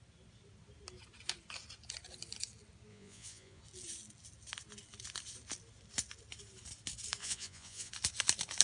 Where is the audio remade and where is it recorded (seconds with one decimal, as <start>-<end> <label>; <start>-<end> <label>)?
0.0-2.9 recorded; 2.9-3.6 remade; 3.6-7.2 recorded; 7.2-7.9 remade; 7.9-8.6 recorded